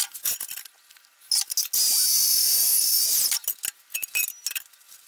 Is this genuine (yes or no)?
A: yes